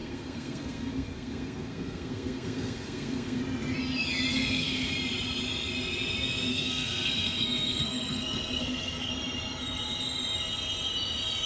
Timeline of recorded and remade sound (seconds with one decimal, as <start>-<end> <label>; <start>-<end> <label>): 0.0-3.4 remade; 3.4-4.3 recorded; 4.3-4.9 remade; 4.9-6.5 recorded; 6.5-9.1 remade; 9.1-11.5 recorded